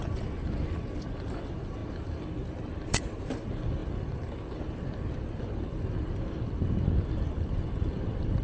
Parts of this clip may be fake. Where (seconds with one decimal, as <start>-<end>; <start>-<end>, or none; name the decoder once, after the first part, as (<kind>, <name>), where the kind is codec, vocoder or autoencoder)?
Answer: none